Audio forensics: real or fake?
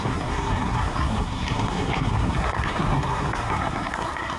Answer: fake